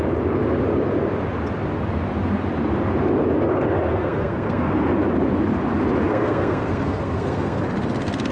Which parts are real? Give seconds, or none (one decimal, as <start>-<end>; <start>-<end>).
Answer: 0.0-3.9; 4.7-6.0; 7.6-8.3